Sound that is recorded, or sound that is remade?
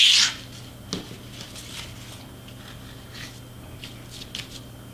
recorded